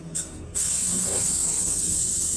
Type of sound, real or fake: fake